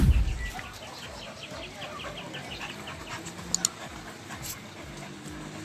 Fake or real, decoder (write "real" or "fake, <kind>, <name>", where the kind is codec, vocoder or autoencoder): real